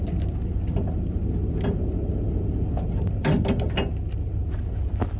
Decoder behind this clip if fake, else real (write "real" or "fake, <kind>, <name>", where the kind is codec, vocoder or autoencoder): real